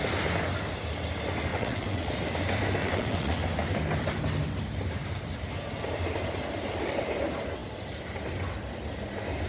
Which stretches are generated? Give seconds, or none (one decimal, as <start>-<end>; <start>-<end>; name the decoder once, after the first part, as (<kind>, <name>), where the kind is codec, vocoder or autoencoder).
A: 1.5-2.1 (vocoder, WaveNeXt); 2.8-3.4